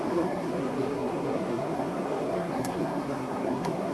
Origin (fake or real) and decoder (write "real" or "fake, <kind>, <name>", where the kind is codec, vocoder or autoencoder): fake, codec, SNAC